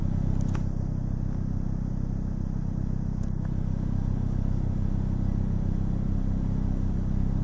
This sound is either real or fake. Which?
real